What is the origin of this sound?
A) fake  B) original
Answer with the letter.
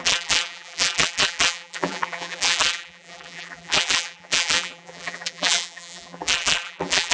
A